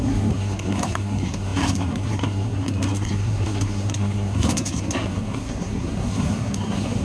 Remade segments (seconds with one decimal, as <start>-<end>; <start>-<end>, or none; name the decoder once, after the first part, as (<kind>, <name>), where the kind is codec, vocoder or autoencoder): 0.0-7.0 (codec, SNAC)